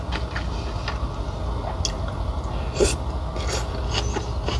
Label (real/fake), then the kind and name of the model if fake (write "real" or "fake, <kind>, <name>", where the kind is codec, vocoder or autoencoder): real